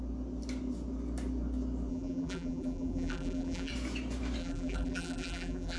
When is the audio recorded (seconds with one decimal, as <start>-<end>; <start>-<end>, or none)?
0.0-1.9; 3.7-4.4